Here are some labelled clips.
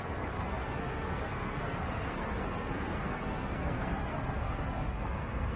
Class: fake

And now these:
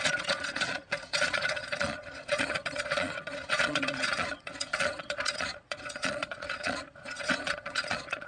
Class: fake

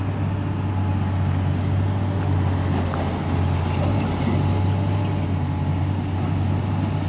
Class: real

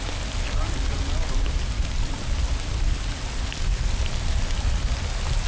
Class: real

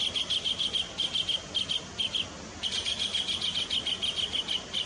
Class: real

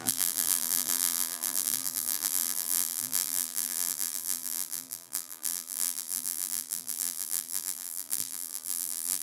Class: fake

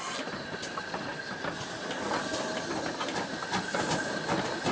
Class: real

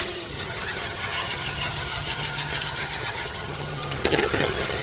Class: fake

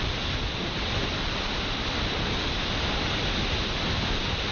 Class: real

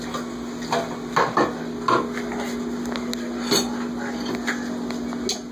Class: real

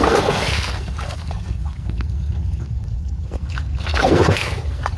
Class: fake